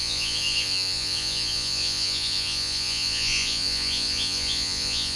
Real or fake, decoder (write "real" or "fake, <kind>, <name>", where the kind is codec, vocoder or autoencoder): fake, vocoder, Vocos